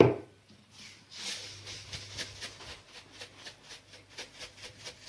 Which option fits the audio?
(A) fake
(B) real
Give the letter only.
B